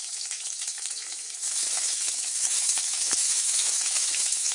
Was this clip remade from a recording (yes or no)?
yes